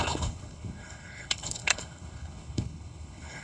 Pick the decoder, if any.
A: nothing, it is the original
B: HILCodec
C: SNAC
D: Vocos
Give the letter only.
B